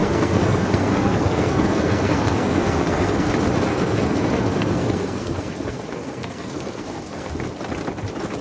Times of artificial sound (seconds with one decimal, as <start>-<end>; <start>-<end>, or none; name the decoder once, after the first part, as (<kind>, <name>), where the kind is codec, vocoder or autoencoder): 0.0-3.3 (codec, SNAC); 3.7-7.3